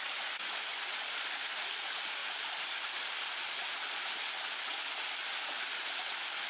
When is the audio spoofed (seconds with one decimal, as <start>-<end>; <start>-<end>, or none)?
0.7-1.6; 2.2-3.8; 4.7-5.3